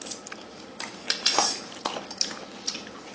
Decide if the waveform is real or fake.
real